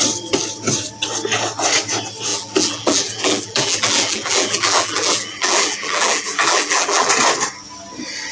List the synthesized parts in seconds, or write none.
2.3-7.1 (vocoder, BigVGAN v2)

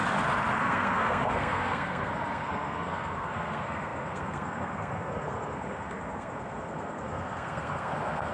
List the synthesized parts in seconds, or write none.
0.6-8.3 (codec, SNAC)

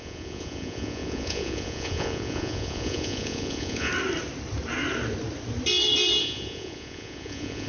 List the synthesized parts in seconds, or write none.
0.0-3.9 (vocoder, Vocos); 6.2-7.7

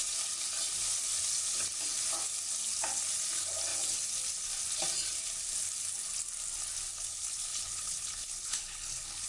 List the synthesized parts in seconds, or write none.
6.9-9.3 (codec, HILCodec)

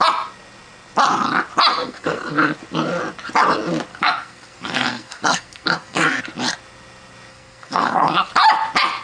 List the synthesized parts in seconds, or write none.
1.7-2.3 (codec, SNAC); 3.9-6.2; 7.3-8.3

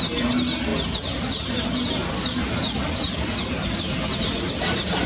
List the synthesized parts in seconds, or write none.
none

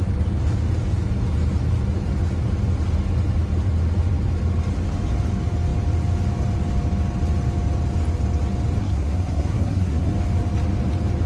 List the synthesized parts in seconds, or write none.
8.8-10.1 (codec, SNAC)